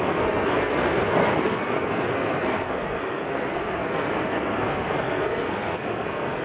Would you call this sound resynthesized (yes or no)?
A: yes